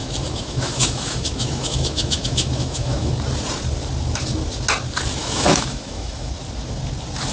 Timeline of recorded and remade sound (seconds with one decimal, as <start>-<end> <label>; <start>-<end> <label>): 0.0-3.1 remade; 3.1-5.2 recorded; 5.2-6.3 remade; 6.3-7.3 recorded